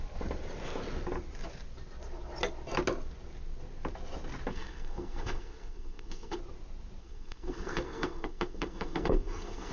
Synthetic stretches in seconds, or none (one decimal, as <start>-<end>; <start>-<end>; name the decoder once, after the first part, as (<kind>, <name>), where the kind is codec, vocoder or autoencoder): 4.5-6.4 (codec, SNAC); 7.0-9.7